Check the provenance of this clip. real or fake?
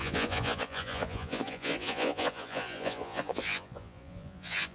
fake